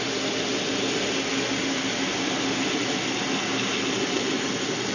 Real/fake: real